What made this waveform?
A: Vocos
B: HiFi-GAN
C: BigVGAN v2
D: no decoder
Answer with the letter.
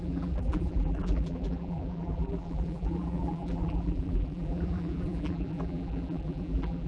C